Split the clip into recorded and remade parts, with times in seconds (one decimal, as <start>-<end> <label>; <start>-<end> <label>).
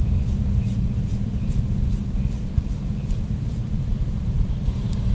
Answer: 0.0-5.1 remade